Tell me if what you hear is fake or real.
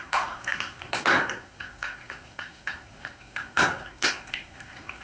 fake